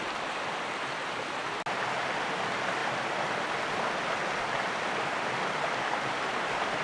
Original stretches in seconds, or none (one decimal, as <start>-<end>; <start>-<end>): 1.4-2.0; 2.8-3.7